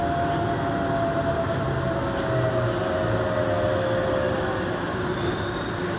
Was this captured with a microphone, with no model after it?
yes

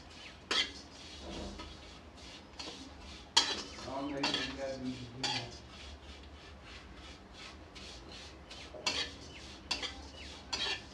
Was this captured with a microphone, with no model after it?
yes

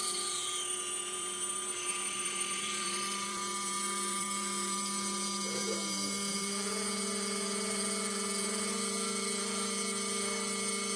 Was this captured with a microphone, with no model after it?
no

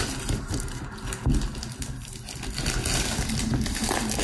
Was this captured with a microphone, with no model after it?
yes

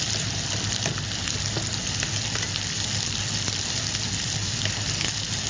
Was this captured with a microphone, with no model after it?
yes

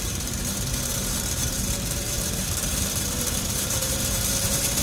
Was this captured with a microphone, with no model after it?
no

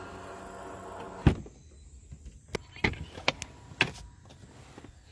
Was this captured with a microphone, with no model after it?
yes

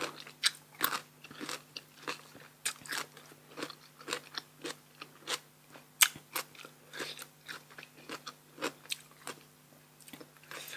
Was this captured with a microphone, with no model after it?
yes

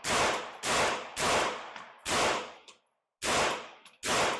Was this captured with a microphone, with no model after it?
yes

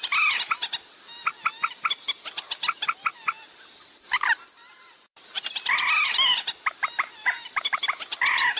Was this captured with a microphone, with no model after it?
yes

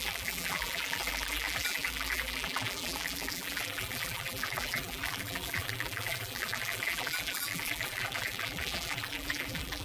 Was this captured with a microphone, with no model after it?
no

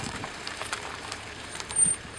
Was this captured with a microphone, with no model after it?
no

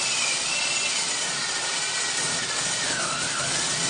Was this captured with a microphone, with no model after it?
yes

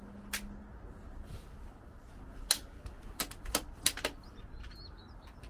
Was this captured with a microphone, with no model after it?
yes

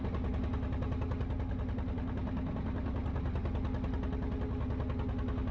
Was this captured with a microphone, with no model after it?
yes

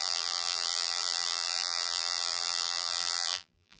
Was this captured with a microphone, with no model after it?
no